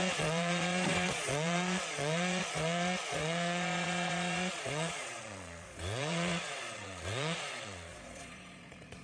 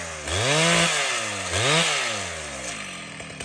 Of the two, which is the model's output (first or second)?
first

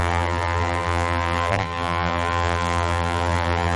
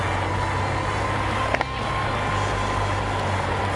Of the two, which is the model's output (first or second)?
first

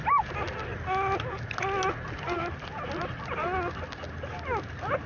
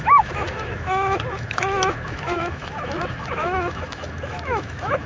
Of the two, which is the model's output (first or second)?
second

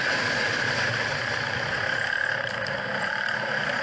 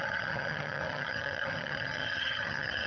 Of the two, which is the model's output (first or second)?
second